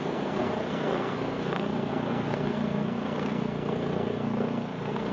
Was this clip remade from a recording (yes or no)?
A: yes